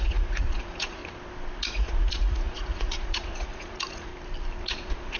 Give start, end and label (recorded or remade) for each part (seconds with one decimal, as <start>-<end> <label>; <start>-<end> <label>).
0.0-1.0 remade; 1.0-1.6 recorded; 1.6-4.1 remade; 4.1-4.6 recorded; 4.6-5.2 remade